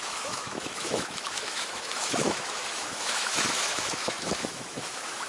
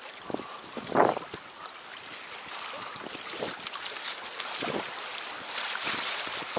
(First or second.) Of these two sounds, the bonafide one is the second